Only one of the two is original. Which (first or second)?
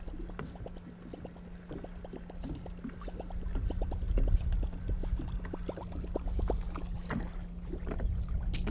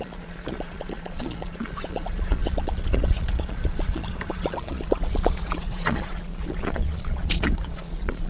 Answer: first